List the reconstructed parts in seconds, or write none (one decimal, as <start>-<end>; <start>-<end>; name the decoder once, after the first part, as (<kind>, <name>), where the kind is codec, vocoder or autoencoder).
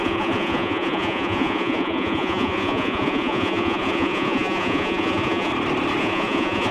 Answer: 0.0-5.5 (vocoder, Vocos); 6.0-6.7